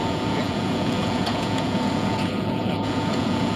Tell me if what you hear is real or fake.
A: fake